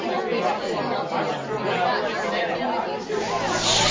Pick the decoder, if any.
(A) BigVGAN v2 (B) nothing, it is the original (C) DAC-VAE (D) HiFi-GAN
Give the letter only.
B